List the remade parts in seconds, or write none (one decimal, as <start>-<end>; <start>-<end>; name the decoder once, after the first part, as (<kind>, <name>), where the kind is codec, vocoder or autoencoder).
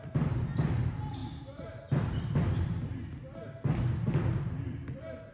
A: none